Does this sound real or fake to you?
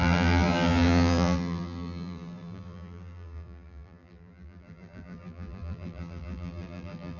fake